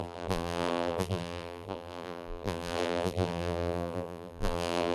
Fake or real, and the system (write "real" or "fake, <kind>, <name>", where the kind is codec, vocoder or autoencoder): fake, vocoder, BigVGAN v2